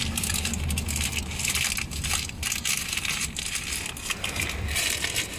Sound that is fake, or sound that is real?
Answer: real